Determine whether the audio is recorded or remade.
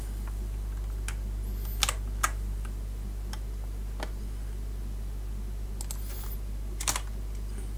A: recorded